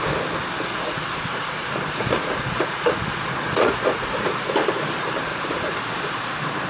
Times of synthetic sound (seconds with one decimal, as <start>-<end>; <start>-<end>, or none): 0.7-4.7; 5.3-6.2